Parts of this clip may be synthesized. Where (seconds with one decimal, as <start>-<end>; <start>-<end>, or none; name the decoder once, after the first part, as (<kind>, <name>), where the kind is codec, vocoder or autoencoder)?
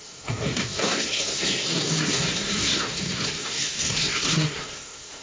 0.0-5.2 (codec, SNAC)